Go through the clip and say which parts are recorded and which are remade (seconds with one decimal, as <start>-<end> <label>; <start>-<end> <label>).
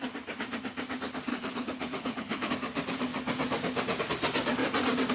0.0-1.3 recorded; 1.3-2.5 remade; 2.5-5.1 recorded